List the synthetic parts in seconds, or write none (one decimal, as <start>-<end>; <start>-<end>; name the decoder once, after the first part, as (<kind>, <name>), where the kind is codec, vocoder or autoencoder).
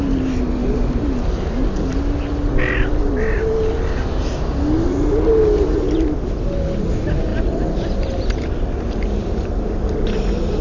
none